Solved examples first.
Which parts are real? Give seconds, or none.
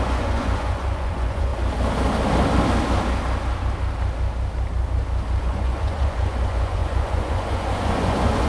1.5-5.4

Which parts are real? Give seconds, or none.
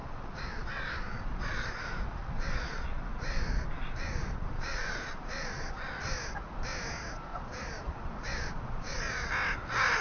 1.8-2.2; 6.0-7.3; 9.0-10.0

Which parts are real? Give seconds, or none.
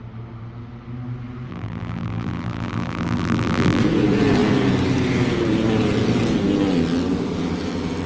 0.0-1.5; 3.8-8.1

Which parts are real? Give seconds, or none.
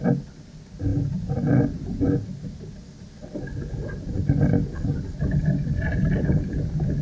0.0-7.0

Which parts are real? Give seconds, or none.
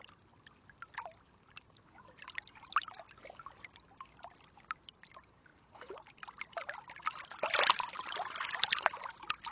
0.0-9.5